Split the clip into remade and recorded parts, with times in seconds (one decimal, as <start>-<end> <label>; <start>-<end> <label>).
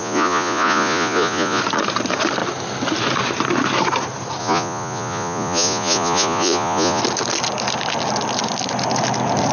0.0-1.6 remade; 1.6-4.4 recorded; 4.4-7.0 remade; 7.0-9.5 recorded